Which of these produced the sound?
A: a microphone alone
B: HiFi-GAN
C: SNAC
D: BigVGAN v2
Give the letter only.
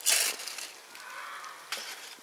A